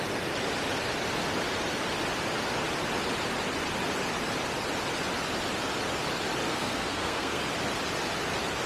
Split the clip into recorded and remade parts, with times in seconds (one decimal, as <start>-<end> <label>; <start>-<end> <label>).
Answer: 0.0-6.5 recorded; 6.5-7.4 remade; 7.4-8.7 recorded